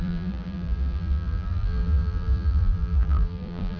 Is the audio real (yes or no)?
no